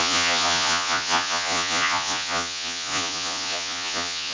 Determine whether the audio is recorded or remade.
remade